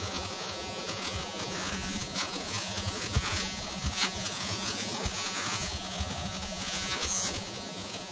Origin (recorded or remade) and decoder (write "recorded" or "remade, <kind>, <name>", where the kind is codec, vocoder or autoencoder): remade, vocoder, Vocos